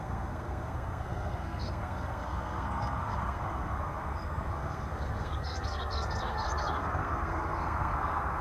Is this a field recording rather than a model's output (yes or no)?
no